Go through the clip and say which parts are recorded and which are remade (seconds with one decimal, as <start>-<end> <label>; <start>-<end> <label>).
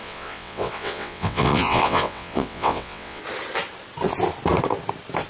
0.0-3.2 remade; 3.2-5.3 recorded